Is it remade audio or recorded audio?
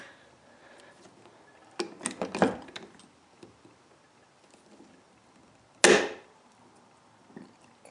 recorded